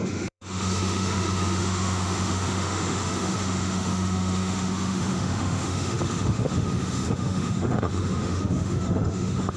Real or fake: fake